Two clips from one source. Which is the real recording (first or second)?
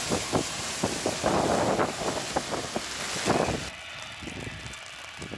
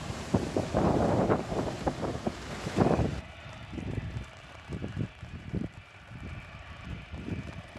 first